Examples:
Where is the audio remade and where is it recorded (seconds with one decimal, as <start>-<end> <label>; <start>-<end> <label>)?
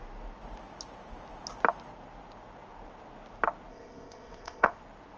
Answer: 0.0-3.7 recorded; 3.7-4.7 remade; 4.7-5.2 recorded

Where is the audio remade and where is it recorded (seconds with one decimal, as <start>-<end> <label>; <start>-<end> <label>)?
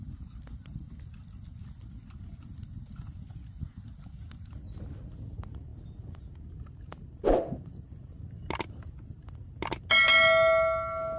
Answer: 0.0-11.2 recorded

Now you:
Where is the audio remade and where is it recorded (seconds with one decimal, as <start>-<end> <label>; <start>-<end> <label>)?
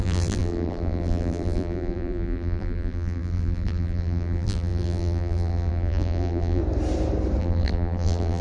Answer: 0.0-6.6 remade; 6.6-7.4 recorded; 7.4-8.4 remade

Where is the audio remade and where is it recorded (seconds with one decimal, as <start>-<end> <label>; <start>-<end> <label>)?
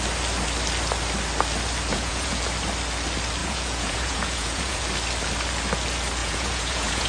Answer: 0.0-1.9 recorded; 1.9-2.4 remade; 2.4-3.4 recorded; 3.4-4.8 remade; 4.8-6.2 recorded; 6.2-7.1 remade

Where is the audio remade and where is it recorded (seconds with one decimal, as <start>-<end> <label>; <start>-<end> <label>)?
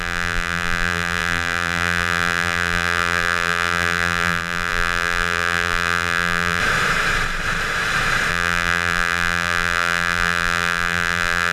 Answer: 0.0-6.6 remade; 6.6-8.3 recorded; 8.3-11.5 remade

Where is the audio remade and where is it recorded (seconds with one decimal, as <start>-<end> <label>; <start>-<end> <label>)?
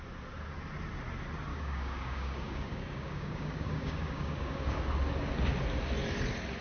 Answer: 0.0-1.5 recorded; 1.5-4.8 remade; 4.8-6.6 recorded